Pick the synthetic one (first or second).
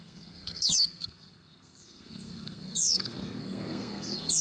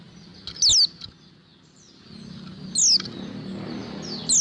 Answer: first